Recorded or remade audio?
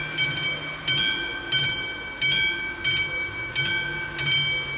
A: recorded